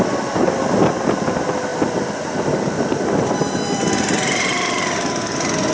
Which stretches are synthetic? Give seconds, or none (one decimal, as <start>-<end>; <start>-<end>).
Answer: none